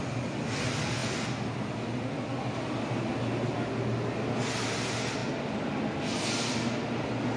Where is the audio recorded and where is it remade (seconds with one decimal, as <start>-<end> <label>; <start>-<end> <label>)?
0.0-7.4 recorded